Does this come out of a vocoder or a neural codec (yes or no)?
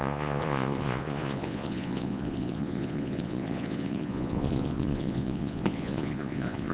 yes